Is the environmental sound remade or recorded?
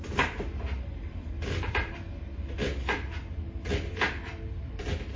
recorded